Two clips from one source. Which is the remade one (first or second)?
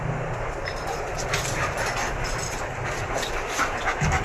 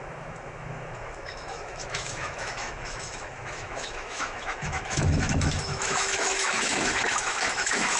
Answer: second